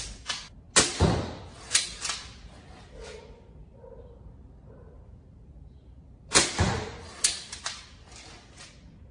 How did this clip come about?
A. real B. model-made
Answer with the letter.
A